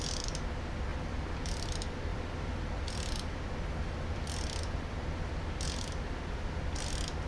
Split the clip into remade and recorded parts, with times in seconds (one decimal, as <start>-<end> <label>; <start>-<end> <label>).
0.0-0.9 recorded; 0.9-1.4 remade; 1.4-2.1 recorded; 2.1-6.5 remade; 6.5-7.3 recorded